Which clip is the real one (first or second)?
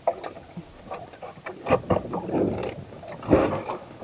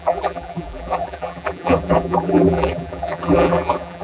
first